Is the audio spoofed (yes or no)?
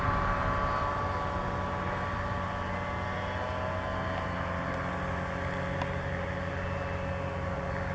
no